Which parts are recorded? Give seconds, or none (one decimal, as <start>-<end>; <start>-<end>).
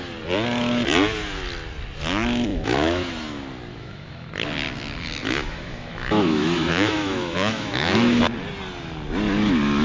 0.0-2.5; 3.1-3.7; 4.3-5.2; 8.2-9.8